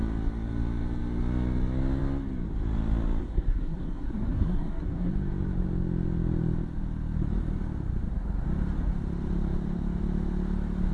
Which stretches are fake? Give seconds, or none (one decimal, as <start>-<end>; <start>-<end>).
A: 3.2-5.1